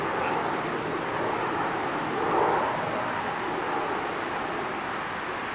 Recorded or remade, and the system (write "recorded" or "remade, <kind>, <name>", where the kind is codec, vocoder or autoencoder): recorded